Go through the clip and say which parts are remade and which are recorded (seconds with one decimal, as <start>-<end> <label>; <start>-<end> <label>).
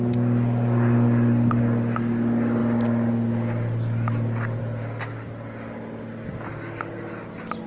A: 0.0-7.7 recorded